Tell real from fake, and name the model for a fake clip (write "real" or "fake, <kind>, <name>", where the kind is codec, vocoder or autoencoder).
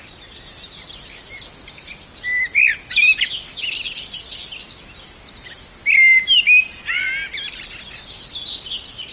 real